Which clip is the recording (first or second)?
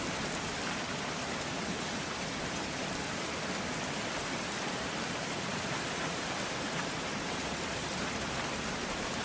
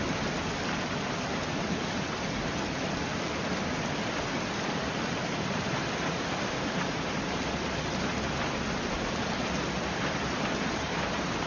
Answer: second